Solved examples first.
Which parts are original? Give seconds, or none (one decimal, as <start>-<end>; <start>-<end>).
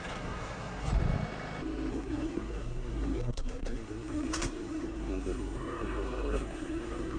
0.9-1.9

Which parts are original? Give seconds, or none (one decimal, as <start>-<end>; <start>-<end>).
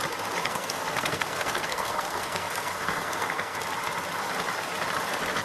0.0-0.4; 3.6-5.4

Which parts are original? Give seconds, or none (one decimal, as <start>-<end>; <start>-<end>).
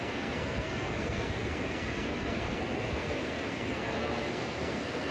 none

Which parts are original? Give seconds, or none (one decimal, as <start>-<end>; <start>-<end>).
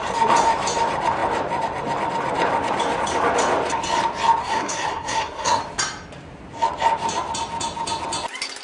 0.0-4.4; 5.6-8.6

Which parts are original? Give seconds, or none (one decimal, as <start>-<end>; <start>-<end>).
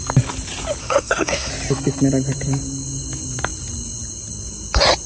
0.0-0.8; 1.5-5.1